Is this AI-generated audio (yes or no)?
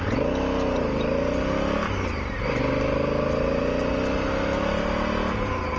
no